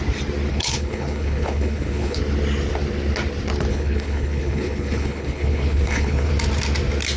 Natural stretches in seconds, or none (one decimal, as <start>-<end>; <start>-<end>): 0.0-0.5; 2.2-3.7; 6.3-7.2